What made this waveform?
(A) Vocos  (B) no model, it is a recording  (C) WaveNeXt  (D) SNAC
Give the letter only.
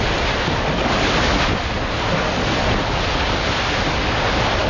B